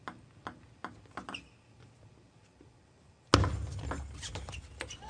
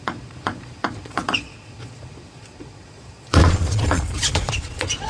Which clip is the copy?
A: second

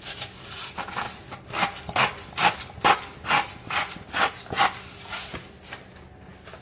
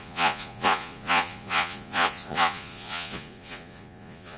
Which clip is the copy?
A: second